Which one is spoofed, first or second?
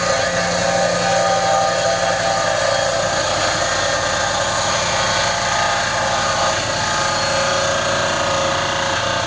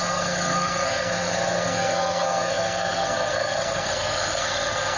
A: second